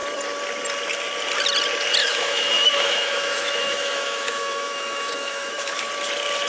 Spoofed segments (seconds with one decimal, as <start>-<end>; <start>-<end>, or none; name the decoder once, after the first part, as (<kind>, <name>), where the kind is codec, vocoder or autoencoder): 2.0-5.9 (autoencoder, DAC-VAE)